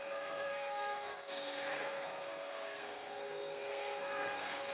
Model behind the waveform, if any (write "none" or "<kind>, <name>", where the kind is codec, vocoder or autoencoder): codec, SNAC